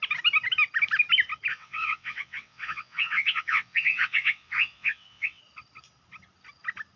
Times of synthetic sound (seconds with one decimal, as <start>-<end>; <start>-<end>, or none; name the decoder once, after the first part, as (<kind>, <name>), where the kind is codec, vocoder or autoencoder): 1.5-5.4 (vocoder, WaveNeXt)